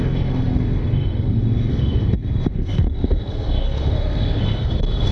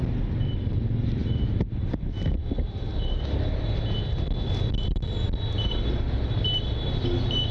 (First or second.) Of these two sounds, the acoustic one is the second